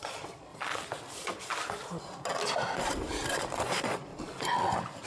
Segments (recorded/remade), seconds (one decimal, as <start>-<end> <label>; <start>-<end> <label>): 0.0-0.5 remade; 0.5-3.6 recorded; 3.6-4.1 remade; 4.1-5.1 recorded

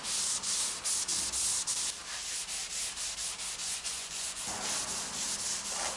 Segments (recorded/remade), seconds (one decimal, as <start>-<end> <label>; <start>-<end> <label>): 0.0-3.6 recorded; 3.6-4.6 remade; 4.6-6.0 recorded

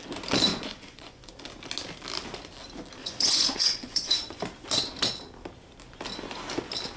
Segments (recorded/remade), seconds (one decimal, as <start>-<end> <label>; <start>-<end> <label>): 0.0-0.5 recorded; 0.5-1.3 remade; 1.3-3.0 recorded; 3.0-4.4 remade; 4.4-7.0 recorded